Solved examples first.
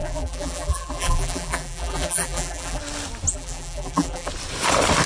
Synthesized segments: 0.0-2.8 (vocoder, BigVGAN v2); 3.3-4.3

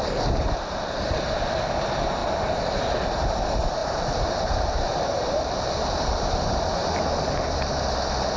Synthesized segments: 2.2-3.4 (vocoder, BigVGAN v2); 3.8-6.3; 6.8-7.6

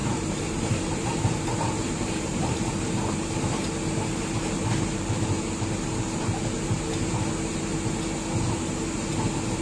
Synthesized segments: 0.0-2.7 (vocoder, BigVGAN v2)

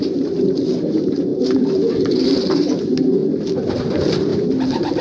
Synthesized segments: 0.0-3.2 (vocoder, BigVGAN v2); 3.8-5.0